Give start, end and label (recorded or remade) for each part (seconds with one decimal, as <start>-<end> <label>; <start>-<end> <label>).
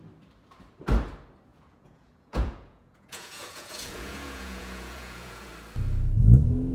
0.0-1.5 recorded; 1.5-5.5 remade; 5.5-6.7 recorded